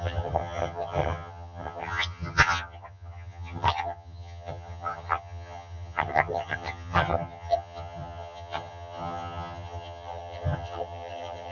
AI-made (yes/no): yes